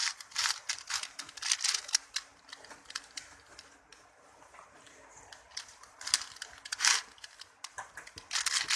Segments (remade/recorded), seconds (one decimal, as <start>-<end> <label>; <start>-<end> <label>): 0.0-0.9 remade; 0.9-8.8 recorded